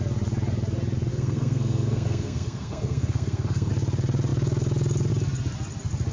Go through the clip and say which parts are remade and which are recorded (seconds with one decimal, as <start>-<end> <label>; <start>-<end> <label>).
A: 0.0-1.1 recorded; 1.1-3.7 remade; 3.7-6.1 recorded